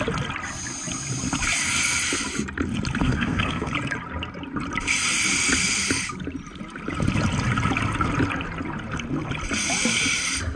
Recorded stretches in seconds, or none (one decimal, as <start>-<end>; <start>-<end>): 0.0-3.0; 3.7-10.6

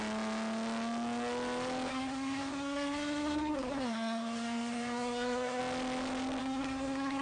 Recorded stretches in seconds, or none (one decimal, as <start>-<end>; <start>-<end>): 0.0-1.9; 5.6-6.4

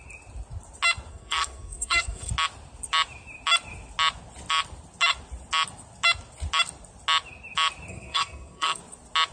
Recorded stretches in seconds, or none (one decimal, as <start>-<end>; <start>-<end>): 0.0-1.1; 2.3-7.9; 8.8-9.3

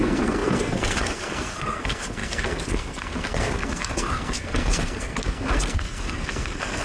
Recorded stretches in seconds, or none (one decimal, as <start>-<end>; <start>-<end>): none

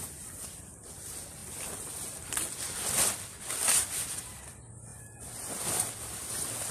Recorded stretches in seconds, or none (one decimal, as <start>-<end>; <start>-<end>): 0.0-6.7